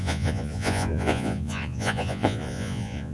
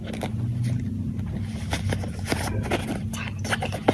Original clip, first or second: second